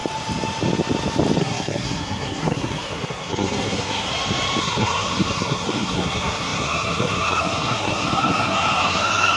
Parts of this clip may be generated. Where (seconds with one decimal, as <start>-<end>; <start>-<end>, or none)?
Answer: 1.4-4.1; 4.6-9.4